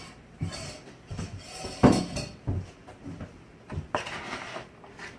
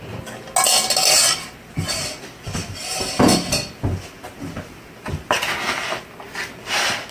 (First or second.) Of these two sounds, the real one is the second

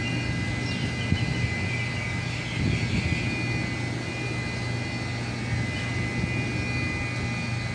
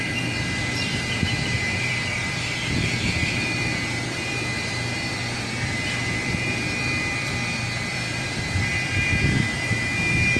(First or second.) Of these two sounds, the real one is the first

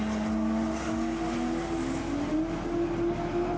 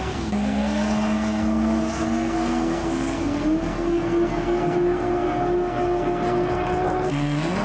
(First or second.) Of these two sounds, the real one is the first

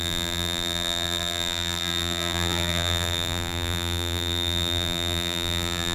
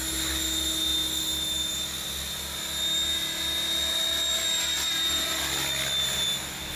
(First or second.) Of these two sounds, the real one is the second